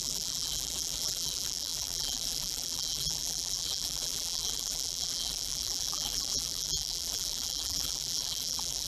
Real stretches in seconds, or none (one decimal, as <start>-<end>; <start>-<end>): none